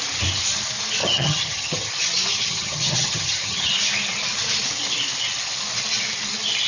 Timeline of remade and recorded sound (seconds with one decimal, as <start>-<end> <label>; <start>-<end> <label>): 0.0-1.0 recorded; 1.0-1.9 remade; 1.9-2.3 recorded; 2.3-3.7 remade; 3.7-6.7 recorded